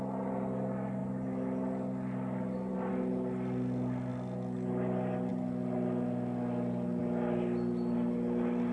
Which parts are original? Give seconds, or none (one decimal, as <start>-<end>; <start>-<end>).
0.0-8.7